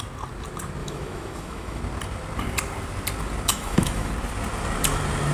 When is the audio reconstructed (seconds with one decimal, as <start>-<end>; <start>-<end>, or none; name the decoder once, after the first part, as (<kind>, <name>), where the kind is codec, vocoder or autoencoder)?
0.8-1.8 (autoencoder, DAC-VAE); 3.5-4.1